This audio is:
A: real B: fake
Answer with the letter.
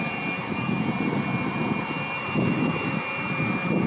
A